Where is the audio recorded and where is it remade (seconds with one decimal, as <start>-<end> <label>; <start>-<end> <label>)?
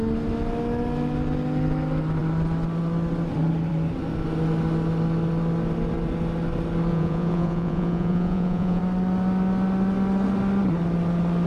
0.0-6.9 recorded; 6.9-8.8 remade; 8.8-11.5 recorded